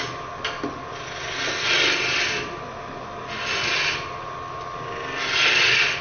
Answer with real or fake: real